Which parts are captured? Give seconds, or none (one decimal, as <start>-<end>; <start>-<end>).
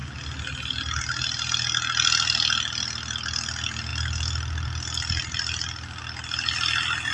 0.0-7.1